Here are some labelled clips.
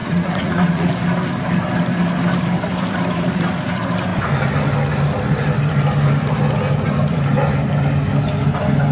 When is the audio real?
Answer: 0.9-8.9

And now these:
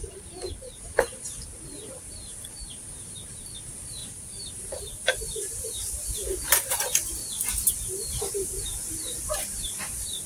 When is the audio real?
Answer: 7.2-7.7